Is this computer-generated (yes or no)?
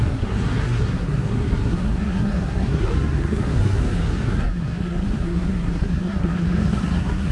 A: yes